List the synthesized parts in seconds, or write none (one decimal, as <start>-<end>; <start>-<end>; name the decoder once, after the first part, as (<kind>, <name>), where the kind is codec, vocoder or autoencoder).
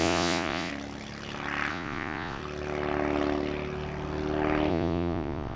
0.0-0.7 (vocoder, Vocos); 1.7-2.4; 4.7-5.6